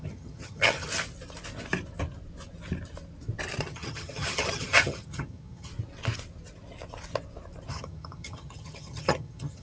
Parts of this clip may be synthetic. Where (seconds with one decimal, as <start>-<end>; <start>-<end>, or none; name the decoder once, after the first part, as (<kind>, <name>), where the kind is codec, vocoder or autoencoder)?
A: 0.0-0.9 (vocoder, HiFi-GAN); 3.6-5.7; 7.7-9.6